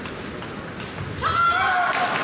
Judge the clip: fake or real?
real